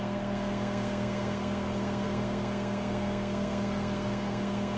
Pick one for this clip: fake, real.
fake